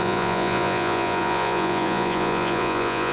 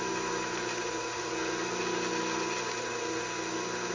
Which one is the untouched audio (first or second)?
second